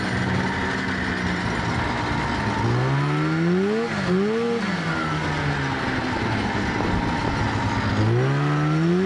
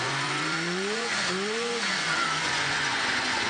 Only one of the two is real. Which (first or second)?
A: first